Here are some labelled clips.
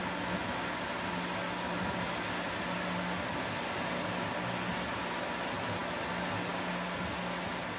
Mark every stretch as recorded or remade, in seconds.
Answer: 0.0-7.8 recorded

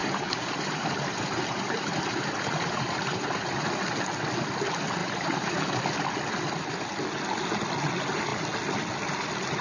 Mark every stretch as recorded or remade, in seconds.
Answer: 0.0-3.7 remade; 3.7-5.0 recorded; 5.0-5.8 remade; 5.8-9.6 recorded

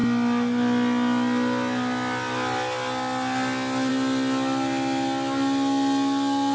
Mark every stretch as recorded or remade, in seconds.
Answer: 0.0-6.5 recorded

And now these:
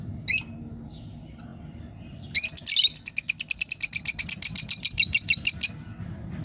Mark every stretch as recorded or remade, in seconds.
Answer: 0.0-6.4 recorded